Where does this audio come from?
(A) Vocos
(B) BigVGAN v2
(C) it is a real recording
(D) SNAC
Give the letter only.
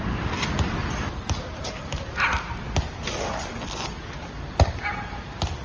C